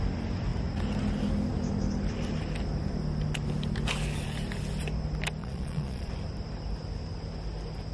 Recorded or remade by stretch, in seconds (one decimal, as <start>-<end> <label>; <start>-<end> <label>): 0.0-5.4 recorded; 5.4-6.1 remade; 6.1-7.9 recorded